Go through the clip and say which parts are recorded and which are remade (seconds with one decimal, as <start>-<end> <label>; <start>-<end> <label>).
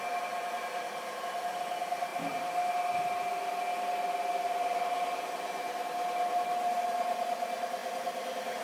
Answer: 0.0-8.6 recorded